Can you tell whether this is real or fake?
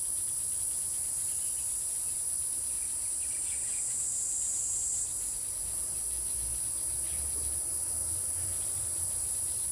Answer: fake